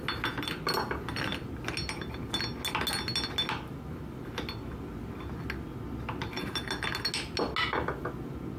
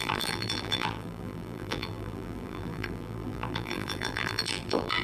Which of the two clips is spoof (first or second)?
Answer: second